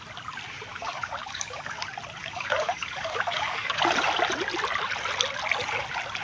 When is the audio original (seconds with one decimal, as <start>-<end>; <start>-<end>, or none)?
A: 0.0-0.7; 1.8-2.2; 3.8-6.2